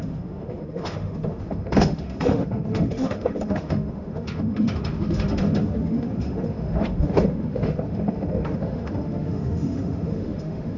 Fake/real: fake